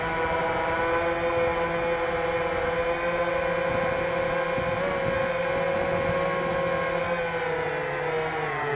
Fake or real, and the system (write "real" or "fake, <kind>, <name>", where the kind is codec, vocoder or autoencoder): real